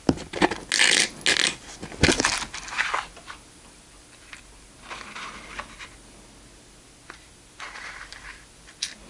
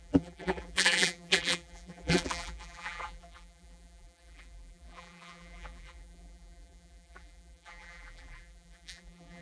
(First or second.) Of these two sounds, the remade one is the second